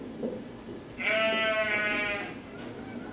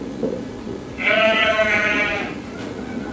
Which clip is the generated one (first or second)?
second